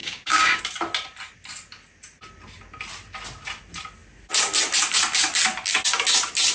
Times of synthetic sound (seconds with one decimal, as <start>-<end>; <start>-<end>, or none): 0.0-0.6